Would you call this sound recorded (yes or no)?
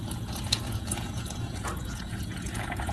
no